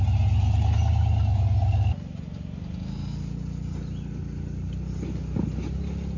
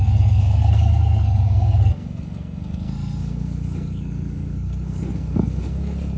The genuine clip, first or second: first